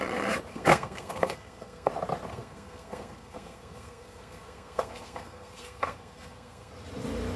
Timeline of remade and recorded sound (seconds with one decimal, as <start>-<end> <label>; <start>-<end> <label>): 0.0-0.5 recorded; 0.5-1.9 remade; 1.9-2.3 recorded; 2.3-6.7 remade; 6.7-7.4 recorded